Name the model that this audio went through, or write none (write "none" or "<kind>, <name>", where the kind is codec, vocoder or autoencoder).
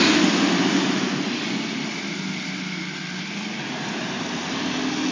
none